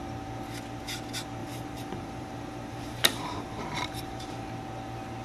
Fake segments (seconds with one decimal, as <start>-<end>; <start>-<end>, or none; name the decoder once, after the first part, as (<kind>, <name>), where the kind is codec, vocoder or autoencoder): 1.4-4.5 (vocoder, BigVGAN v2)